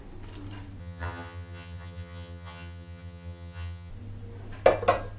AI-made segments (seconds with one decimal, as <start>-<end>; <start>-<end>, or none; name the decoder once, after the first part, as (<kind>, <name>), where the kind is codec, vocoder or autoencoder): 0.8-3.9 (vocoder, HiFi-GAN)